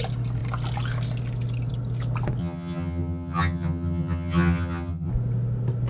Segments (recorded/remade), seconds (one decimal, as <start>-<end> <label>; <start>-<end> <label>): 0.0-2.4 recorded; 2.4-5.1 remade; 5.1-5.9 recorded